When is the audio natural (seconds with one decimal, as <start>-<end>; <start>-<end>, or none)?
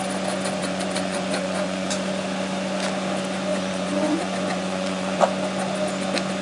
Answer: 0.0-0.6; 1.9-3.5; 5.2-6.4